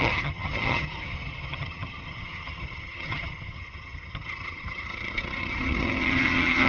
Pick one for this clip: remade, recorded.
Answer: remade